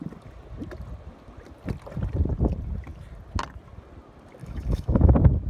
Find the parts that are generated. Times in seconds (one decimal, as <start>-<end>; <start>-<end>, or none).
4.4-5.1